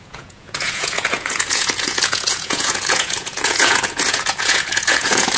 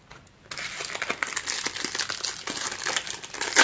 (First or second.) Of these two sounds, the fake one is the first